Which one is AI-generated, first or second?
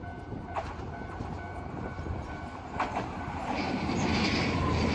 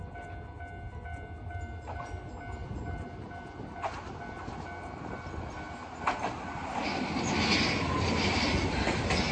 first